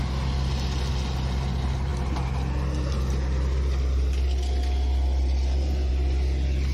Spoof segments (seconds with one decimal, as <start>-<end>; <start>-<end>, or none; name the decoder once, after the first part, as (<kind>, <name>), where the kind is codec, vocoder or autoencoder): none